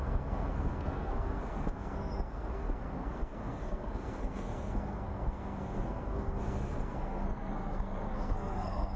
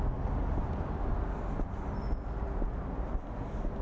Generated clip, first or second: first